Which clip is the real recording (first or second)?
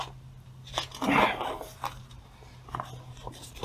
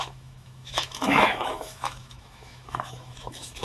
first